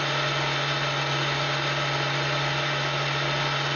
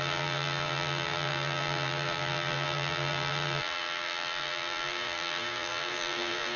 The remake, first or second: second